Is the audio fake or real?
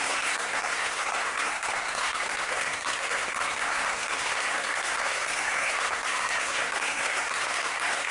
fake